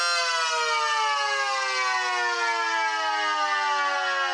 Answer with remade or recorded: recorded